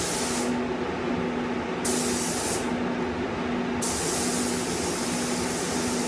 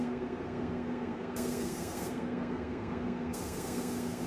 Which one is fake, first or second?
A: second